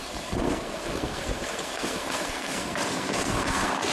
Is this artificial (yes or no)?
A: yes